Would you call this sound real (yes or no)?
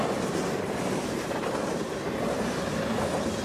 yes